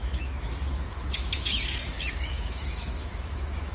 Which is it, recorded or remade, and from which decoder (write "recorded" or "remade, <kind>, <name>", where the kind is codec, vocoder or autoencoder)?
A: remade, autoencoder, DAC-VAE